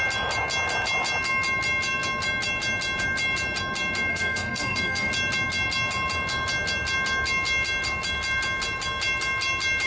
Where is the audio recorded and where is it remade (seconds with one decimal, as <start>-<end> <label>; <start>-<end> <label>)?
0.0-4.1 recorded; 4.1-5.1 remade; 5.1-9.9 recorded